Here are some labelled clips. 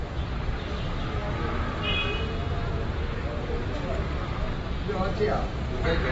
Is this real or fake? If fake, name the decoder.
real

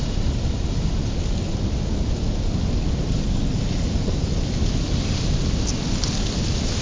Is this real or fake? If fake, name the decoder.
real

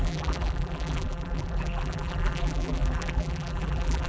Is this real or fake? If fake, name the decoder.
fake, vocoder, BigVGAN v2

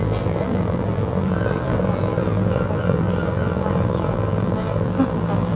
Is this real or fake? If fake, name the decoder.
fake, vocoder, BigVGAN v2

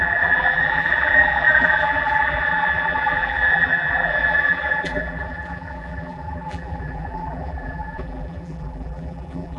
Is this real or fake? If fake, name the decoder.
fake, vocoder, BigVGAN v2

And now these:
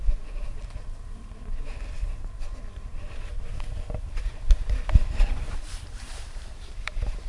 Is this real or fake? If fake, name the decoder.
fake, vocoder, BigVGAN v2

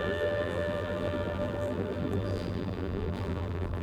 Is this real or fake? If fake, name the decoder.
fake, vocoder, BigVGAN v2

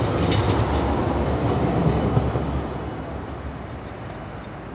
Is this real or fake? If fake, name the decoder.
real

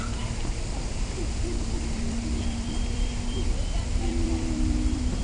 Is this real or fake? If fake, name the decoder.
fake, vocoder, BigVGAN v2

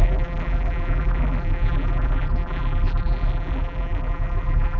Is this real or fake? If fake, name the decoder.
fake, vocoder, BigVGAN v2